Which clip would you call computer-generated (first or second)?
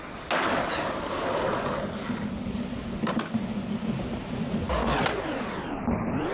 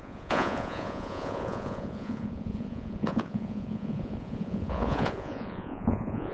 second